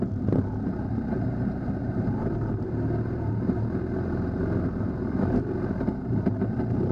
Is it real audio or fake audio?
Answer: fake